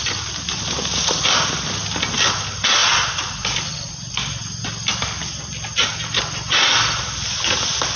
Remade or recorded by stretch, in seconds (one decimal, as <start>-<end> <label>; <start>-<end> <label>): 0.0-8.0 recorded